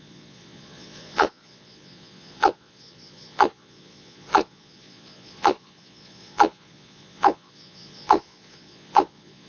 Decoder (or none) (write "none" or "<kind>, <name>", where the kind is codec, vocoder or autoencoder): vocoder, Vocos